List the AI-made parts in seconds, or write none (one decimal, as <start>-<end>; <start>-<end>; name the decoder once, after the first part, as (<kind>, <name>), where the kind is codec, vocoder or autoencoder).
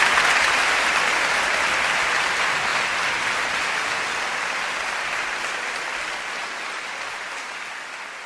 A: none